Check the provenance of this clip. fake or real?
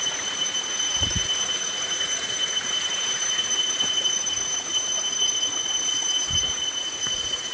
fake